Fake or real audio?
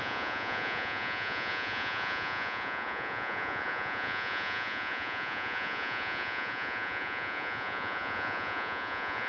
fake